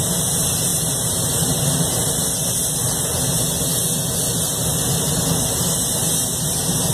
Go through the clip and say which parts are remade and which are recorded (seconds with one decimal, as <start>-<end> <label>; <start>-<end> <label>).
0.0-6.9 recorded